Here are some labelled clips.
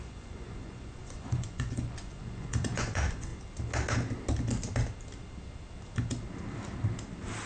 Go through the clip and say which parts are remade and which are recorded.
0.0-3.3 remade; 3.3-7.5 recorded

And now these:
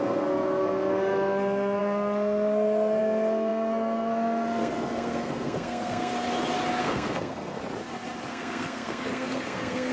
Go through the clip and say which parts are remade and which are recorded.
0.0-6.1 remade; 6.1-6.8 recorded; 6.8-7.6 remade; 7.6-8.3 recorded; 8.3-9.9 remade

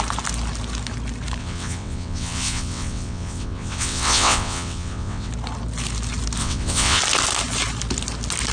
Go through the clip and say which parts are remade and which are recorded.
0.0-1.4 recorded; 1.4-5.3 remade; 5.3-6.4 recorded; 6.4-7.0 remade; 7.0-8.5 recorded